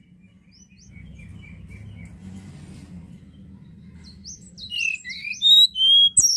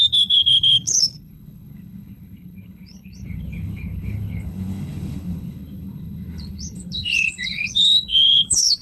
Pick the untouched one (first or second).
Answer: first